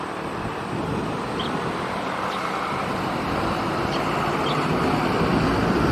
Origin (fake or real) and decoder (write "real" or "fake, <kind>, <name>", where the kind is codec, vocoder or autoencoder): real